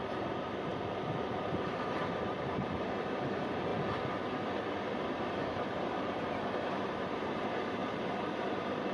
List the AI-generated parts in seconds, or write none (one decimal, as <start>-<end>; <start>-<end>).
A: 0.0-3.7; 5.2-8.9